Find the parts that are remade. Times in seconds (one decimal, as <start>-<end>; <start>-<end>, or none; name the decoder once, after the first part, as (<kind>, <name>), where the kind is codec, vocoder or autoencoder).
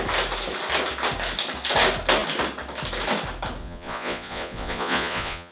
3.6-5.5 (vocoder, Vocos)